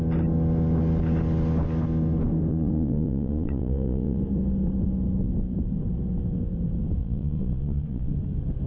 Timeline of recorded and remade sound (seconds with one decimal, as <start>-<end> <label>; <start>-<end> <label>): 0.0-2.5 recorded; 2.5-4.2 remade; 4.2-7.0 recorded; 7.0-8.1 remade; 8.1-8.7 recorded